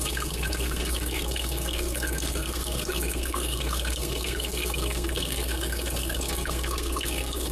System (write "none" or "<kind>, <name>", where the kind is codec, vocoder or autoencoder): codec, SNAC